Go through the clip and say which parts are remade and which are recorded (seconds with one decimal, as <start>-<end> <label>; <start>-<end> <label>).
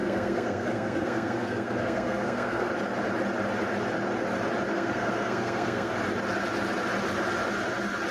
0.0-2.7 remade; 2.7-4.7 recorded; 4.7-5.9 remade; 5.9-8.1 recorded